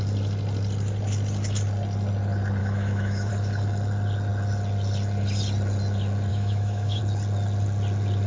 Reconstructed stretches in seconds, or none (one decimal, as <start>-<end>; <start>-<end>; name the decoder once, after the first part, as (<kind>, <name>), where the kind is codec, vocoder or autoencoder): 2.6-3.3 (autoencoder, DAC-VAE); 6.3-7.0